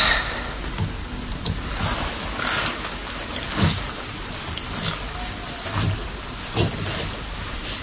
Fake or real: real